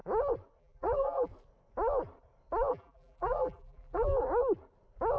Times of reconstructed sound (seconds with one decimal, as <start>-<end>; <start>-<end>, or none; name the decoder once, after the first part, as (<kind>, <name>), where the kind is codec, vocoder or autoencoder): 0.6-1.3 (vocoder, BigVGAN v2); 2.7-4.1